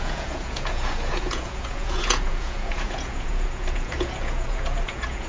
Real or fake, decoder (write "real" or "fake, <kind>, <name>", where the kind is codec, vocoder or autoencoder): fake, vocoder, Vocos